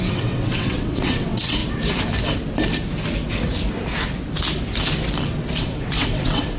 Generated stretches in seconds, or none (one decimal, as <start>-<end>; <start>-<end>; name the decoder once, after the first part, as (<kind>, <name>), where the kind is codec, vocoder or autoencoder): 0.0-1.6 (vocoder, WaveNeXt); 5.6-6.6